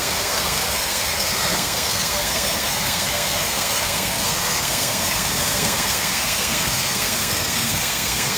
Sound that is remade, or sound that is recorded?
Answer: remade